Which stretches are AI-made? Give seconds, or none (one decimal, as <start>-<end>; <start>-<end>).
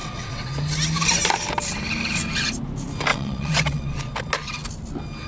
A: 0.0-0.5; 3.1-4.0